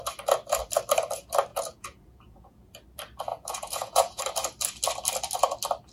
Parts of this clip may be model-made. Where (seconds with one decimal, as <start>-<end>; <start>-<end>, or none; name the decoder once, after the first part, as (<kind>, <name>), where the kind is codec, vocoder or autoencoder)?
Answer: 1.5-2.7 (vocoder, Vocos); 3.3-4.2